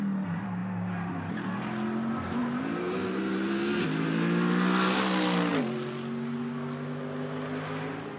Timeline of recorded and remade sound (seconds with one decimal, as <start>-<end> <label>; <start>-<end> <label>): 0.0-8.2 recorded